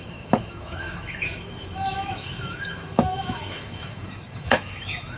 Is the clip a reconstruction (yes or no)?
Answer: yes